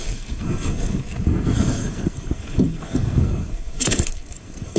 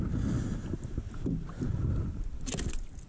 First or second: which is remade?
first